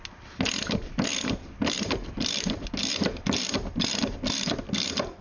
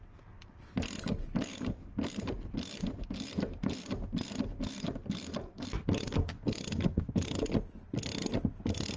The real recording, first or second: second